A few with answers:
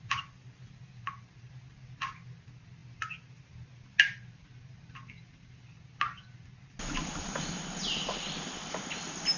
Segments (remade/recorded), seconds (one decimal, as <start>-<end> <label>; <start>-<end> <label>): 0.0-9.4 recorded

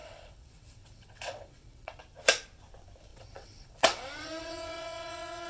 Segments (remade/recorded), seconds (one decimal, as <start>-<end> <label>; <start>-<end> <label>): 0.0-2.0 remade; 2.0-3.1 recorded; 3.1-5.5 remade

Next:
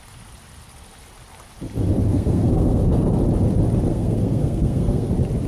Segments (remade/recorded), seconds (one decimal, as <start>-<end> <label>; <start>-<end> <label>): 0.0-2.1 recorded; 2.1-3.1 remade; 3.1-3.9 recorded; 3.9-5.1 remade; 5.1-5.5 recorded

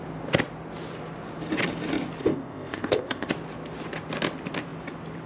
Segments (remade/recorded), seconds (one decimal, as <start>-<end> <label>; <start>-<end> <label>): 0.0-2.2 recorded; 2.2-3.3 remade; 3.3-5.3 recorded

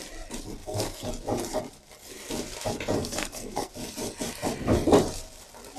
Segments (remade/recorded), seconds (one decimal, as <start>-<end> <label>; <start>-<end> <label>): 0.0-0.6 recorded; 0.6-1.1 remade; 1.1-3.0 recorded; 3.0-3.7 remade; 3.7-5.8 recorded